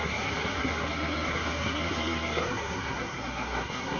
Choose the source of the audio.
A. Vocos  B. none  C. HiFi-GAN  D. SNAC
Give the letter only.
D